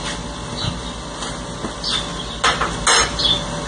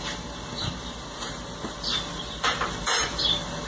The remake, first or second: second